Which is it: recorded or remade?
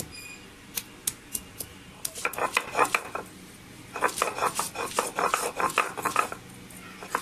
recorded